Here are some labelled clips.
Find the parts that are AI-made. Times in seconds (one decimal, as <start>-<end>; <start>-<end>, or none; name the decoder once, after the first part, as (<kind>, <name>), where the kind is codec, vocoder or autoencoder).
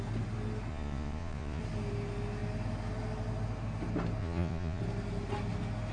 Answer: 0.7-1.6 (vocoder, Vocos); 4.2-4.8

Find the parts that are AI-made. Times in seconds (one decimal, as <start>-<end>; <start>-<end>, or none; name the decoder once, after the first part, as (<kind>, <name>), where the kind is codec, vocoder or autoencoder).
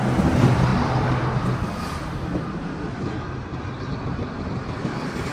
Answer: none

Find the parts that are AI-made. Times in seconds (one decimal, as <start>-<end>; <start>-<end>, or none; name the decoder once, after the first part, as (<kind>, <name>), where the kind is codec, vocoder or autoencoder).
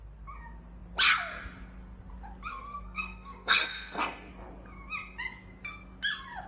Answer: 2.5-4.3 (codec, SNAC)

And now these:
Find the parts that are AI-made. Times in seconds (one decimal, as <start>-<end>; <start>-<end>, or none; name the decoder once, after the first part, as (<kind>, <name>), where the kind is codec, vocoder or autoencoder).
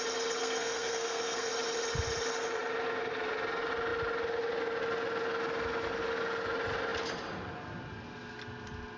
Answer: 0.4-1.5 (codec, SNAC)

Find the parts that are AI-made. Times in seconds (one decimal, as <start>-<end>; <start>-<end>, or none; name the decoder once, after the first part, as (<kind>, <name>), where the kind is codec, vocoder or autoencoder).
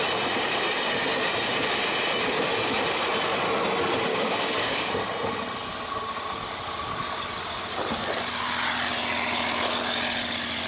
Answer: 4.1-4.9 (codec, DAC)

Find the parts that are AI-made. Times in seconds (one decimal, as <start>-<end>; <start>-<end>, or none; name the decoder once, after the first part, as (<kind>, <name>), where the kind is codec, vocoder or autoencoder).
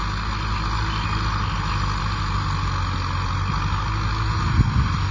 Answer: none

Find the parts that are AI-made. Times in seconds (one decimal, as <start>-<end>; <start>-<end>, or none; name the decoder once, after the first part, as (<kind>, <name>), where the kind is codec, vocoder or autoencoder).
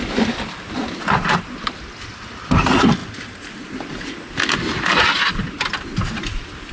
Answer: none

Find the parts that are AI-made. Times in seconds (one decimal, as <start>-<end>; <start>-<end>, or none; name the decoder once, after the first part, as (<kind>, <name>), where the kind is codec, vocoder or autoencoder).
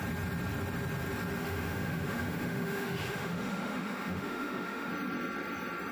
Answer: 1.4-4.9 (autoencoder, DAC-VAE)